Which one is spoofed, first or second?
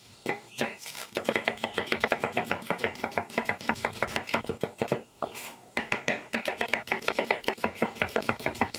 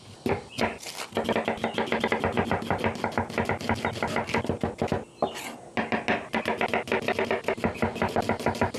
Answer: first